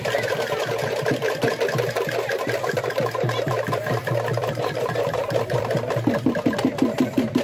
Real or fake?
fake